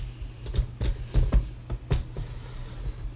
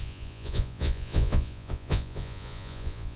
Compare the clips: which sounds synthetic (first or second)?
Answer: second